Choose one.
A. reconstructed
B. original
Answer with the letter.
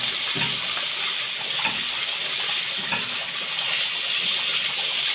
B